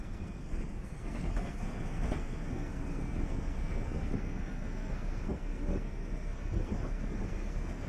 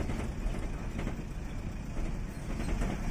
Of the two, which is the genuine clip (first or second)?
second